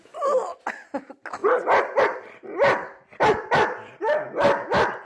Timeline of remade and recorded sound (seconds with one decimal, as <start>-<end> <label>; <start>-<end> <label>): 0.0-5.0 recorded